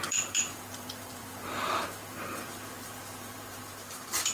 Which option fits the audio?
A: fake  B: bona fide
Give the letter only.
A